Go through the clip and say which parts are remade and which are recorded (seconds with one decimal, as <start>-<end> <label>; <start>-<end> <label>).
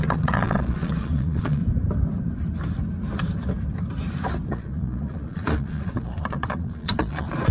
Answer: 0.0-1.6 remade; 1.6-4.5 recorded; 4.5-7.5 remade